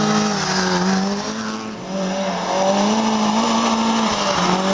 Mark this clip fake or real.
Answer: real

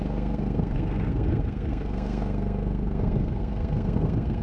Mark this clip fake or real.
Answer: fake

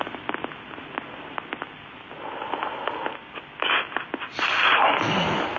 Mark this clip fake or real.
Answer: real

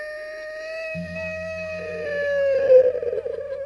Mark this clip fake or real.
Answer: real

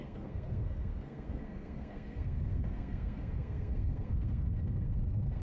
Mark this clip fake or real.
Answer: fake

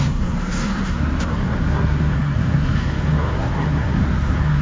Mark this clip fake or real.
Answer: fake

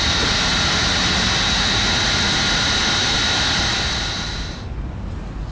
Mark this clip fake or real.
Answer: real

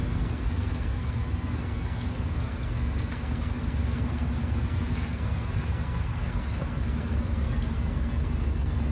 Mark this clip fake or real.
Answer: fake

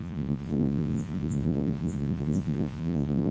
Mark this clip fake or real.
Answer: fake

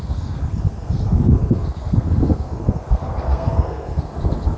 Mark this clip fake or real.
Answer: fake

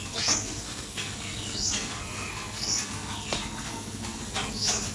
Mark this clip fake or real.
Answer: fake